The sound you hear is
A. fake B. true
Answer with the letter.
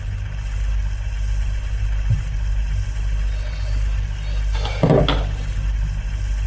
B